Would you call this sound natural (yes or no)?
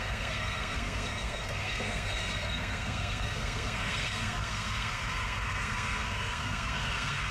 no